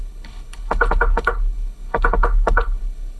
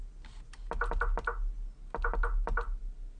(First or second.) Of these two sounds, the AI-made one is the first